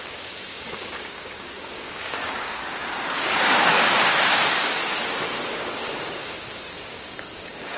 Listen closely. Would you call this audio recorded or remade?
remade